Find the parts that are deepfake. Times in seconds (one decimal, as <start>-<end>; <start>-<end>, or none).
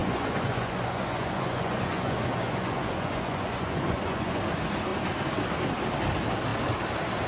0.0-4.4